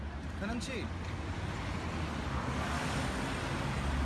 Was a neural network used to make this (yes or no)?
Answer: no